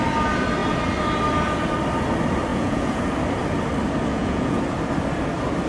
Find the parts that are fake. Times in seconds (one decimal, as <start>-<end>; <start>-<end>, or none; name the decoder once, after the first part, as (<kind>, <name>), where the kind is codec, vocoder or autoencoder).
2.5-3.0 (vocoder, Vocos); 4.1-4.6